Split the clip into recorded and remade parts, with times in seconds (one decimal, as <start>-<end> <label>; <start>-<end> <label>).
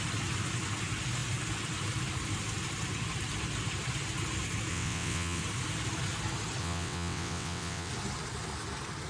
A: 0.0-4.7 recorded; 4.7-5.4 remade; 5.4-6.6 recorded; 6.6-7.9 remade; 7.9-9.1 recorded